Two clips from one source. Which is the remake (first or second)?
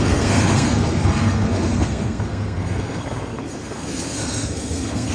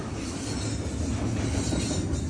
first